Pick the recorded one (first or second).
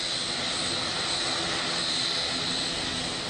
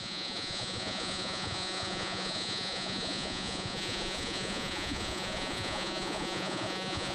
first